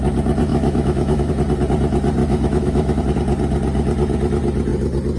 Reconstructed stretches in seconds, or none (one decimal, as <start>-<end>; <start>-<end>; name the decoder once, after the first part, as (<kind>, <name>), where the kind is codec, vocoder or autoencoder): 0.5-1.3 (autoencoder, DAC-VAE); 2.2-3.0